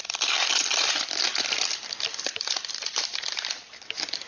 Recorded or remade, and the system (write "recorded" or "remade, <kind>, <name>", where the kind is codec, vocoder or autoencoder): remade, vocoder, BigVGAN v2